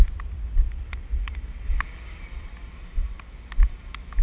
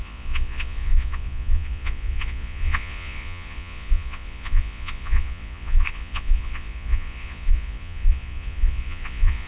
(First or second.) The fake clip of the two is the second